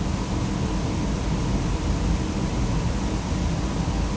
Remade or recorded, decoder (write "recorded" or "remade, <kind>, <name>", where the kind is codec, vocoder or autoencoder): recorded